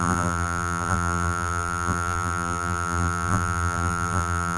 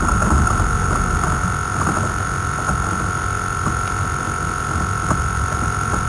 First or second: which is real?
second